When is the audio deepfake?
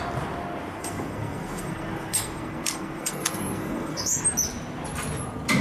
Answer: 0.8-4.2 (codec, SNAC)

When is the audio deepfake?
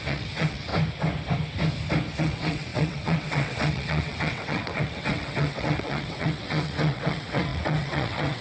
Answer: 0.0-0.7 (vocoder, WaveNeXt); 2.2-8.4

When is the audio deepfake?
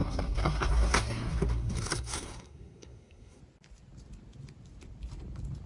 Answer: 0.0-3.4 (codec, SNAC)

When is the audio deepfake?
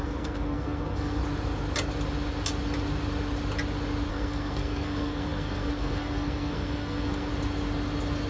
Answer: 0.0-1.2 (codec, SNAC); 4.1-7.3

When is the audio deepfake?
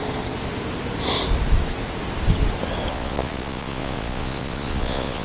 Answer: 2.9-5.2 (vocoder, Vocos)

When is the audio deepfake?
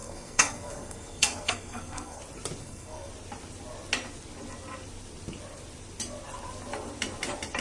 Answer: 0.0-2.2 (codec, SNAC); 2.6-3.1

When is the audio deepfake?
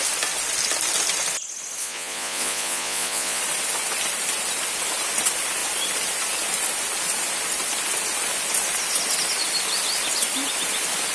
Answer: 1.8-3.4 (vocoder, Vocos)